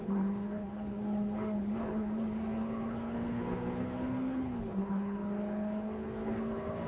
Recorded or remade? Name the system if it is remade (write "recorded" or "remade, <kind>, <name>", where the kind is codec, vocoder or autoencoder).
remade, codec, HILCodec